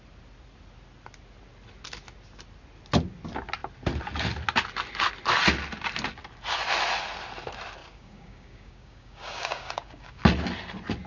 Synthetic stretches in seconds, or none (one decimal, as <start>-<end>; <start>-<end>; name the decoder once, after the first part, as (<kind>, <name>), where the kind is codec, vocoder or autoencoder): 7.8-10.2 (codec, DAC)